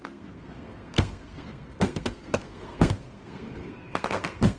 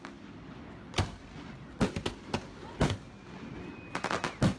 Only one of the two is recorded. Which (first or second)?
second